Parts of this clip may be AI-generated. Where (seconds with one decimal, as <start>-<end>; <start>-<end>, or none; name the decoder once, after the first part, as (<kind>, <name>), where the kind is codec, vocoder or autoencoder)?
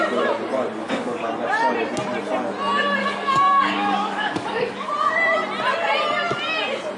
0.8-1.3 (codec, DAC); 3.0-4.9